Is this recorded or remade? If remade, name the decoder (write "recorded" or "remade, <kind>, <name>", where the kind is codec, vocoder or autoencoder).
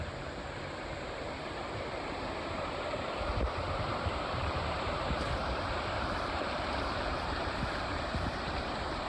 remade, vocoder, BigVGAN v2